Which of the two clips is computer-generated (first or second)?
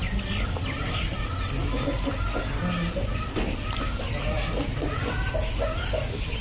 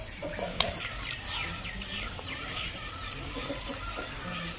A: second